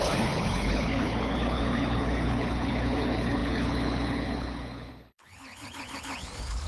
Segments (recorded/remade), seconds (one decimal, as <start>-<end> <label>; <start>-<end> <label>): 0.0-6.7 remade